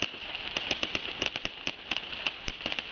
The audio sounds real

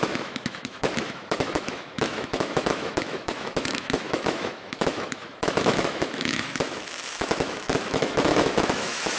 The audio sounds fake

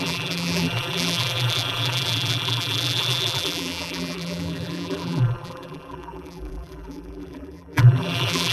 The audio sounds fake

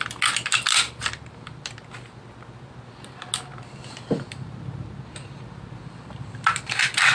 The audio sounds real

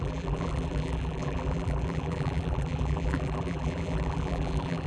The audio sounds fake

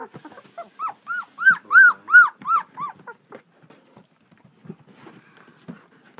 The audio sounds real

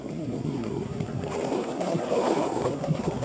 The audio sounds fake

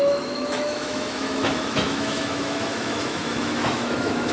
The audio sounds fake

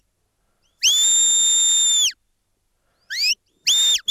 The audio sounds real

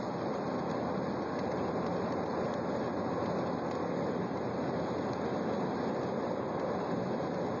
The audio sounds real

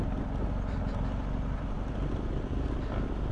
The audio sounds real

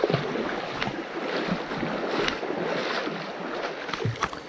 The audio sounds real